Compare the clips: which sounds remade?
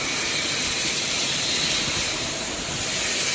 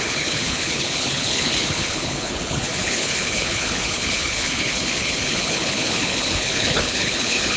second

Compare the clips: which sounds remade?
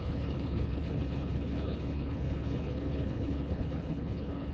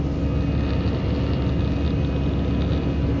first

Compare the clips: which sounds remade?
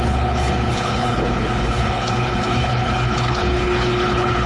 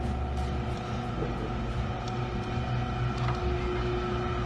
first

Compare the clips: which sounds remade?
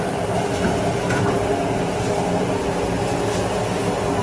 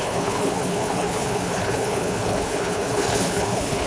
second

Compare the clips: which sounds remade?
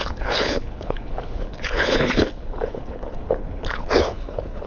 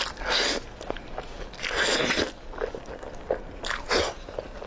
first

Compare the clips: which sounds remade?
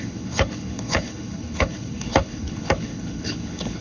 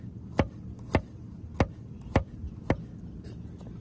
first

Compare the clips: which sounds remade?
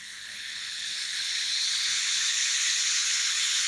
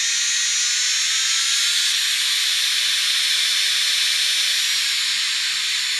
first